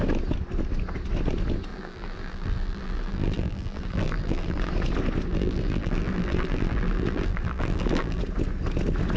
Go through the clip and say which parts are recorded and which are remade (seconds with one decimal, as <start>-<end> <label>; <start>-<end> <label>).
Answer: 0.0-1.7 recorded; 1.7-4.7 remade; 4.7-5.3 recorded; 5.3-8.2 remade; 8.2-9.2 recorded